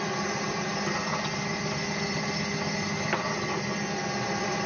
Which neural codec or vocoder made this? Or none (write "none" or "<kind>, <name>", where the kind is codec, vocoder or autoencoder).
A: none